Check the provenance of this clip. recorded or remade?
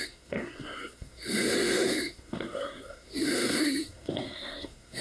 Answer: remade